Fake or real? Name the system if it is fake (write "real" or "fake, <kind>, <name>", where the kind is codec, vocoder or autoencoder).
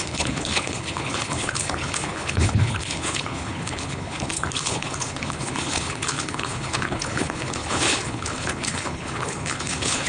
fake, codec, HILCodec